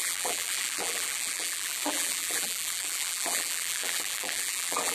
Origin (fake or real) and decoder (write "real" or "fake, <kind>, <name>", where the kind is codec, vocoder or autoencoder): fake, vocoder, BigVGAN v2